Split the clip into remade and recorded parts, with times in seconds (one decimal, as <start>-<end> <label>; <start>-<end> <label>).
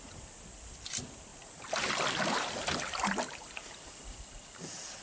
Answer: 0.0-5.0 recorded